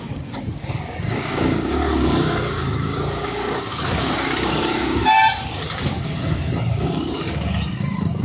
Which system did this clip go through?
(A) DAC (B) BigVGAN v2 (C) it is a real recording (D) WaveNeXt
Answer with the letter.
A